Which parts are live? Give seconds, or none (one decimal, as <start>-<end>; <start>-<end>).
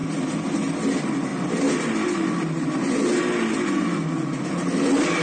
0.0-5.2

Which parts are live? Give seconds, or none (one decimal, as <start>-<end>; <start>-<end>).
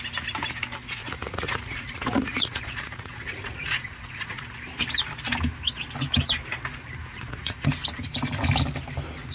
0.0-1.0; 4.4-7.0; 7.7-9.3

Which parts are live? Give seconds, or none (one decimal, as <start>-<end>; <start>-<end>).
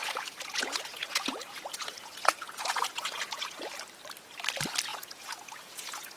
3.7-4.9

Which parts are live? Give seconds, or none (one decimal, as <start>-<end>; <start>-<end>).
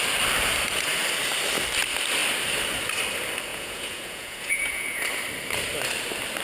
0.0-3.5; 5.0-6.4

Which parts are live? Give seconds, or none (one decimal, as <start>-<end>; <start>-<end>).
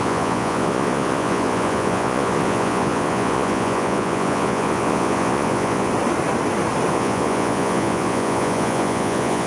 5.9-6.9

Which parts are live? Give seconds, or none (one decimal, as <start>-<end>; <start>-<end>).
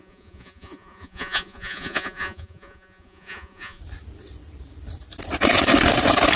3.8-6.4